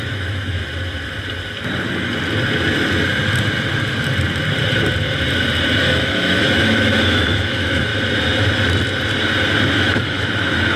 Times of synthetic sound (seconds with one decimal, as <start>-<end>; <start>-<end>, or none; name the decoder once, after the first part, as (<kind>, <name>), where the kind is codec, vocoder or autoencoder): 0.0-0.6 (autoencoder, DAC-VAE); 5.8-7.9; 9.7-10.8